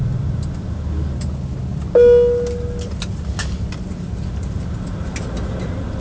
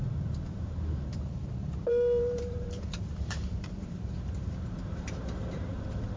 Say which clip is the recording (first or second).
first